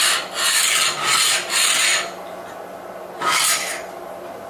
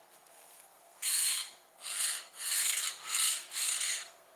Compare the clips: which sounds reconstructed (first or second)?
second